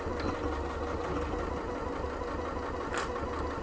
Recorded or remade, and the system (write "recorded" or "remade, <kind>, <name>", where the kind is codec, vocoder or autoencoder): recorded